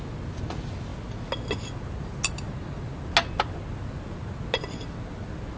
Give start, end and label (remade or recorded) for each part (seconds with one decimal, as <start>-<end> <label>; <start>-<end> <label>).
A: 0.0-5.6 recorded